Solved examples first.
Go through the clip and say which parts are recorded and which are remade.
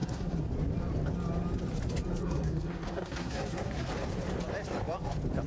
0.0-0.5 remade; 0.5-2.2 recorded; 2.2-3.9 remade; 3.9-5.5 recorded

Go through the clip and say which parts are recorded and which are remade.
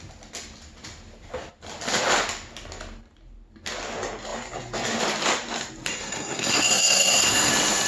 0.0-5.9 recorded; 5.9-7.5 remade; 7.5-7.9 recorded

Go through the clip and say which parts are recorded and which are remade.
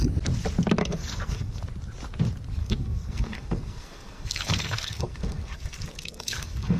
0.0-0.8 recorded; 0.8-1.6 remade; 1.6-2.6 recorded; 2.6-6.8 remade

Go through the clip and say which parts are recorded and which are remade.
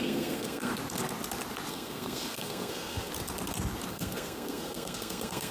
0.0-0.7 remade; 0.7-1.7 recorded; 1.7-3.1 remade; 3.1-3.9 recorded; 3.9-5.5 remade